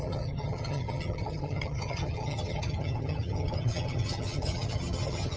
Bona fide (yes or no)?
no